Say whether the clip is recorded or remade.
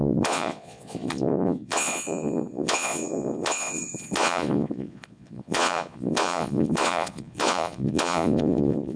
remade